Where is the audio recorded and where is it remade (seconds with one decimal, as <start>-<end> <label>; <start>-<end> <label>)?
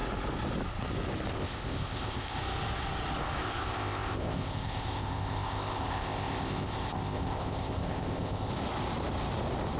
0.0-1.3 recorded; 1.3-2.4 remade; 2.4-3.4 recorded; 3.4-8.5 remade; 8.5-9.8 recorded